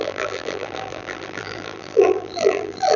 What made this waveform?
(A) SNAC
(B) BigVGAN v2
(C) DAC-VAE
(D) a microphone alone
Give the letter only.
B